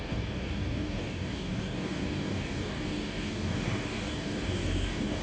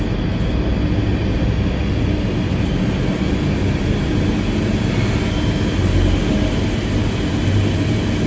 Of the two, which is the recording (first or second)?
second